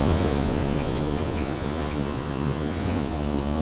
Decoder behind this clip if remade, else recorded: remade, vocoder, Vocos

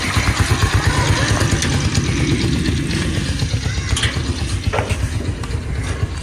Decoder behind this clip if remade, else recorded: recorded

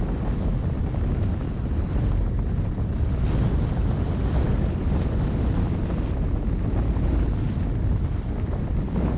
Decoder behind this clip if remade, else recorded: recorded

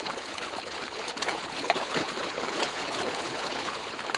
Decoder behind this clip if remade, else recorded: remade, codec, HILCodec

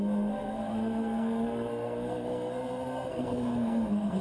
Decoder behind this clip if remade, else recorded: remade, codec, SNAC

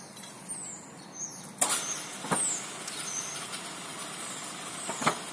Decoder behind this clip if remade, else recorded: recorded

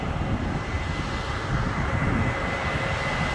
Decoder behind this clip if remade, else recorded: recorded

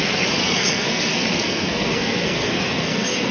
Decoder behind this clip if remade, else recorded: remade, codec, SNAC